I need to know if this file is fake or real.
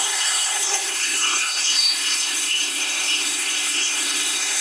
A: fake